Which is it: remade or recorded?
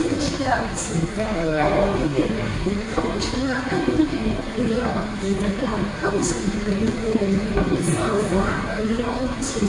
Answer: remade